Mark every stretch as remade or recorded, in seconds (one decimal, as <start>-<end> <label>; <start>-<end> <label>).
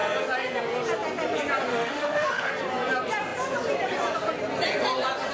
0.0-1.7 recorded; 1.7-2.5 remade; 2.5-5.3 recorded